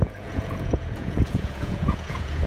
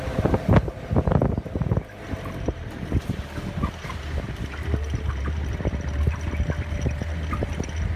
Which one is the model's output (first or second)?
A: first